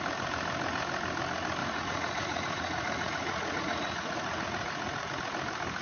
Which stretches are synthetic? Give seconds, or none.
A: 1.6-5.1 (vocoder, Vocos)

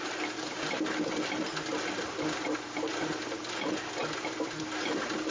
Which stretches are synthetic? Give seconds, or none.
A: none